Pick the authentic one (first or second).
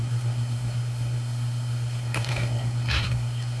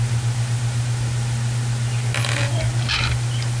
second